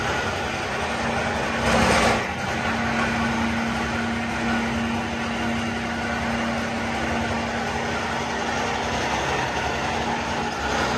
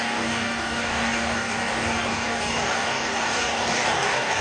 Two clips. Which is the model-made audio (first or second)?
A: second